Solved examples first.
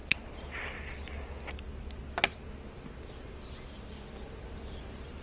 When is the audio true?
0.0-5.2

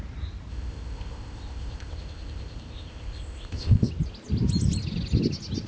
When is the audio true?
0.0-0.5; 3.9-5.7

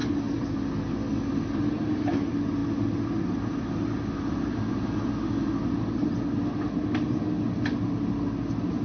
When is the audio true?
0.0-8.8

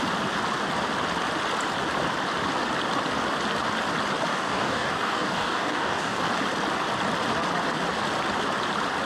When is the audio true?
0.0-4.3; 6.2-9.1

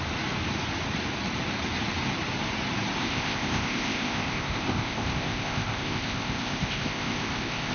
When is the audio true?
0.0-3.0

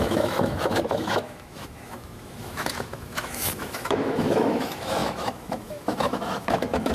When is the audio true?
none